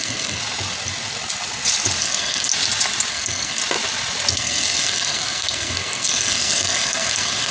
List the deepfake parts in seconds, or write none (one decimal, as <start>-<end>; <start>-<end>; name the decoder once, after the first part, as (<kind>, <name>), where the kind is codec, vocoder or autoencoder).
0.0-0.4 (codec, SNAC); 2.0-2.5; 3.1-3.6; 4.3-7.5